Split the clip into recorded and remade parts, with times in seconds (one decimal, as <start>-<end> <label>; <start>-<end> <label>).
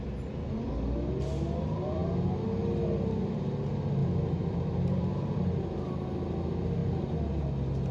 0.0-4.0 recorded; 4.0-5.4 remade; 5.4-7.9 recorded